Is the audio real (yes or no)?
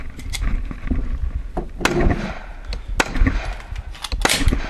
yes